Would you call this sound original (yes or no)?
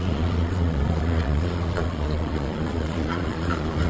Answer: no